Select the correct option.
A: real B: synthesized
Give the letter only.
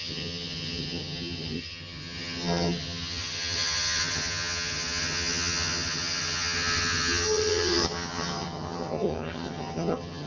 B